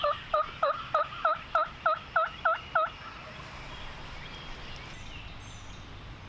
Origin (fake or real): real